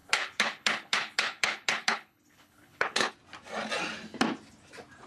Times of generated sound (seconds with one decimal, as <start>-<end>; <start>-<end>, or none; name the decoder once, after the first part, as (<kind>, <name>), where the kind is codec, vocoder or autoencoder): 0.0-3.1 (codec, HILCodec)

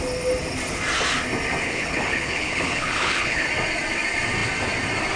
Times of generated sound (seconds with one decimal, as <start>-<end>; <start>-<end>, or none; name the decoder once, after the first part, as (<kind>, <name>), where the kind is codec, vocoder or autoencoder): 1.6-3.5 (codec, HILCodec)

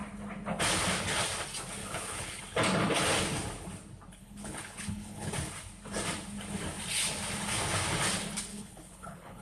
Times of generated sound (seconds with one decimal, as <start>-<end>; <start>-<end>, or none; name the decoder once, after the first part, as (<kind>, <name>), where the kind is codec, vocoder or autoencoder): 1.8-2.4 (codec, HILCodec); 4.2-5.3; 8.5-9.4

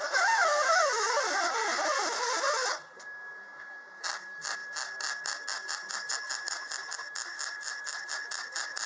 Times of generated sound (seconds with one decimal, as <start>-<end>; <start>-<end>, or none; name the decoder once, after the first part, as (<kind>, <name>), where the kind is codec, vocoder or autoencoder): none